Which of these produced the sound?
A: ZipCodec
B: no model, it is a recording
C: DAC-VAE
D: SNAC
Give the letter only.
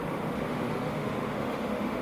C